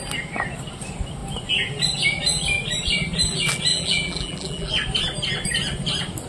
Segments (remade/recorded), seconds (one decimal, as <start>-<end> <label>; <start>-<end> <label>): 0.0-3.7 recorded; 3.7-4.7 remade; 4.7-6.3 recorded